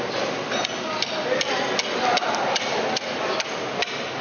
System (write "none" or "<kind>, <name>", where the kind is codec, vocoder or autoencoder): none